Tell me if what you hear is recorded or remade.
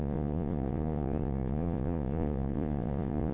remade